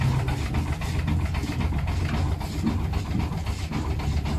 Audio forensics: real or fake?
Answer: real